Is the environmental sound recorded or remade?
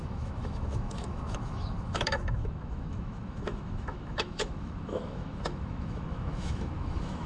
remade